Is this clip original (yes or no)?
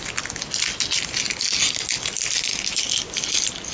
yes